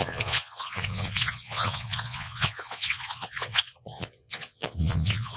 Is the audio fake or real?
fake